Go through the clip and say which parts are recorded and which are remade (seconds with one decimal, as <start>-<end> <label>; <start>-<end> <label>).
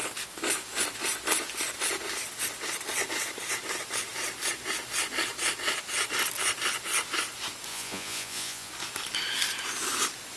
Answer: 0.0-7.7 recorded; 7.7-8.7 remade; 8.7-10.4 recorded